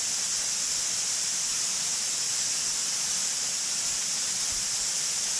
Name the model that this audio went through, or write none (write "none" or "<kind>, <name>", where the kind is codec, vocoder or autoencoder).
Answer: none